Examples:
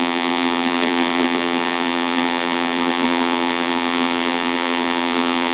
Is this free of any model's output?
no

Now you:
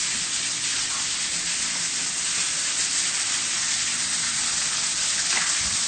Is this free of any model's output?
yes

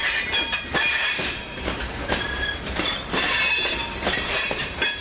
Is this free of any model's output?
no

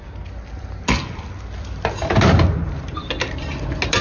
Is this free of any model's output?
yes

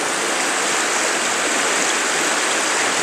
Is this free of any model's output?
yes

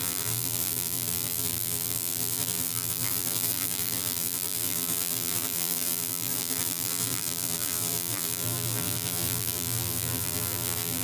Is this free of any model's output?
no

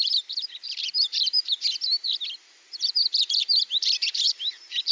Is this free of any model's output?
no